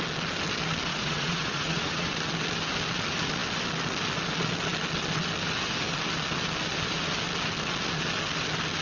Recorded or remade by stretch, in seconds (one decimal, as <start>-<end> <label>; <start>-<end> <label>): 0.0-0.9 recorded; 0.9-2.1 remade; 2.1-8.8 recorded